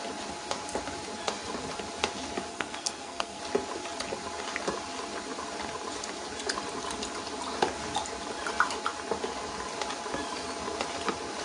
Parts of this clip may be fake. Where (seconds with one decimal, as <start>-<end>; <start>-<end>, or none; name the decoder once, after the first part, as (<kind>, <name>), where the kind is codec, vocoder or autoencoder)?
2.5-3.4 (codec, SNAC)